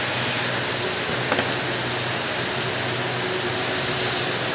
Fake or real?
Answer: real